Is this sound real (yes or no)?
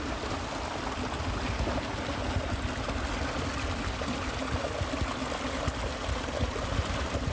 yes